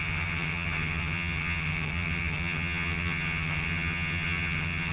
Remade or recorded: remade